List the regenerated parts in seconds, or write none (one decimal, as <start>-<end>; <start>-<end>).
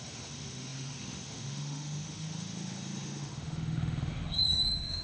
0.0-5.0